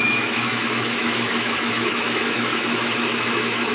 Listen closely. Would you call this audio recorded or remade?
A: remade